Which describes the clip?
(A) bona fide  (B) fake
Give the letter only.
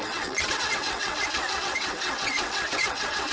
B